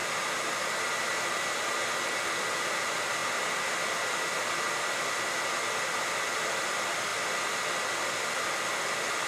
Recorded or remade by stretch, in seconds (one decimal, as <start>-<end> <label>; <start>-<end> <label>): 0.0-9.3 recorded